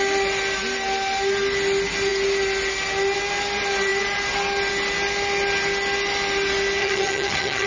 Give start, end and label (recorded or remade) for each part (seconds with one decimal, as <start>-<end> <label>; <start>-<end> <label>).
0.0-6.8 recorded; 6.8-7.7 remade